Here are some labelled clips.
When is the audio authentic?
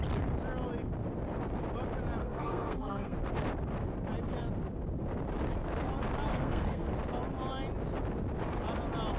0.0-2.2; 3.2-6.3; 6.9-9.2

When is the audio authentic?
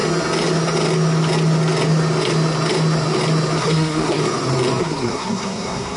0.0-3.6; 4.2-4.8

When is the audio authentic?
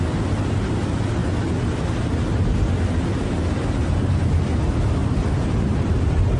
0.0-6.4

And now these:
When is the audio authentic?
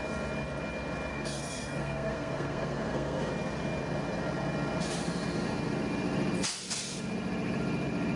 0.0-1.1; 3.3-8.2